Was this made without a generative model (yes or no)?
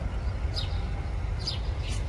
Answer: yes